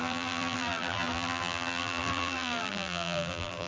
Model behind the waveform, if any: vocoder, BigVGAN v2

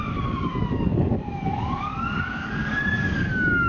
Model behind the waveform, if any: codec, DAC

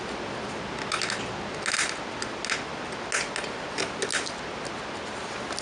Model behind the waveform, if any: none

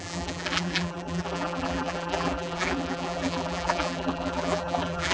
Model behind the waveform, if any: vocoder, BigVGAN v2